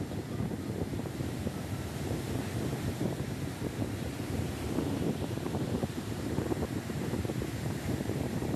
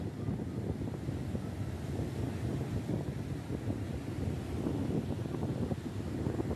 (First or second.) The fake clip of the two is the first